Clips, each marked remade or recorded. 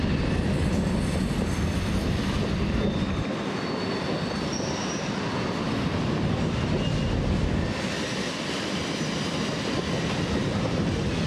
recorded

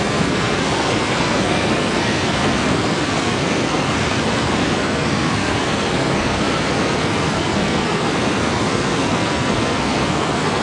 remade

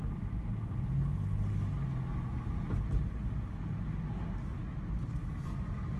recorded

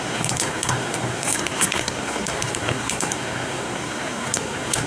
remade